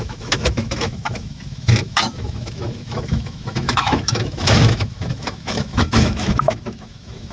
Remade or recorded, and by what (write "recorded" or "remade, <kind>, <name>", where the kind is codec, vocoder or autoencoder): remade, autoencoder, DAC-VAE